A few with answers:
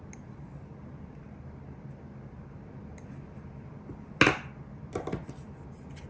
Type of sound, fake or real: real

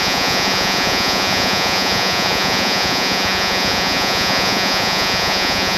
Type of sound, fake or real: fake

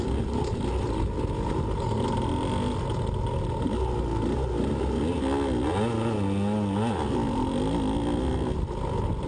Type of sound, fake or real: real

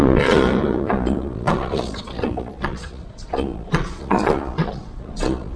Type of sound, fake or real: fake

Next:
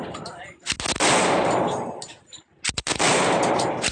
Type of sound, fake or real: real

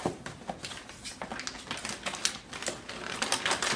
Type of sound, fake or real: real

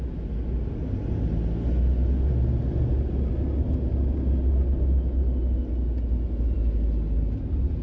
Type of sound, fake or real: real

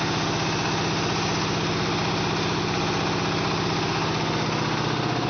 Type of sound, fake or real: real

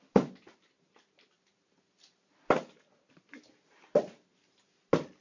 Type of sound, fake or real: real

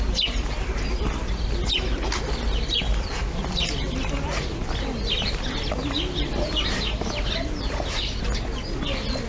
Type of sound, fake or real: real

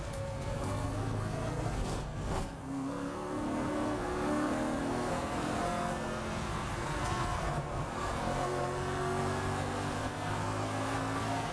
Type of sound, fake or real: fake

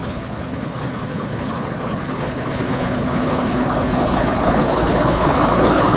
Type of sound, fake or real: fake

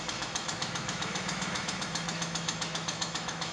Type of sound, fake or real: fake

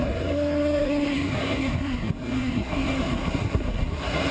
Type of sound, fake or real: fake